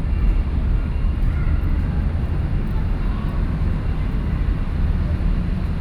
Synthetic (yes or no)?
no